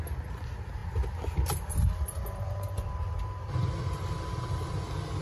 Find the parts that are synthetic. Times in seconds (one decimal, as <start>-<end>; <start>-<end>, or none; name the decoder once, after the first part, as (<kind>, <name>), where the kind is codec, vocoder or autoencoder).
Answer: none

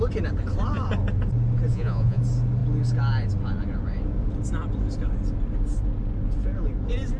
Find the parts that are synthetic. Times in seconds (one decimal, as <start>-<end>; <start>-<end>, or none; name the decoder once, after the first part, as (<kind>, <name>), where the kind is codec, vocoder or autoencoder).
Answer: 1.7-2.2 (vocoder, Vocos)